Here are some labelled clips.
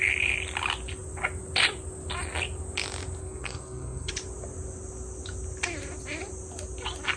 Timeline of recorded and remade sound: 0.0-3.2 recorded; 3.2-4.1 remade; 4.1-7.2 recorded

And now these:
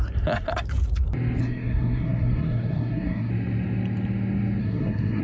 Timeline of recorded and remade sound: 0.0-1.4 recorded; 1.4-3.3 remade; 3.3-4.6 recorded; 4.6-5.2 remade

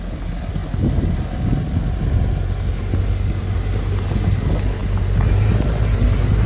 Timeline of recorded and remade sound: 0.0-6.5 recorded

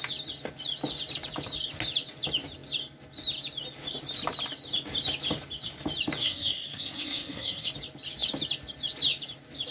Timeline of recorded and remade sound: 0.0-6.2 recorded; 6.2-7.7 remade; 7.7-9.7 recorded

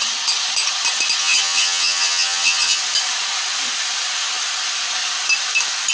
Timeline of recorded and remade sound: 0.0-1.2 recorded; 1.2-2.8 remade; 2.8-5.9 recorded

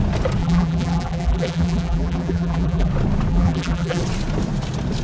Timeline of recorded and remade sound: 0.0-0.4 recorded; 0.4-2.9 remade; 2.9-3.3 recorded; 3.3-4.0 remade; 4.0-5.0 recorded